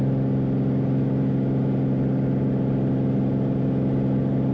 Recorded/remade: recorded